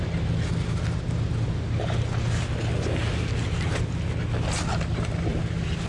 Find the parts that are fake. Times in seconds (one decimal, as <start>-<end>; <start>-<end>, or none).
5.3-5.9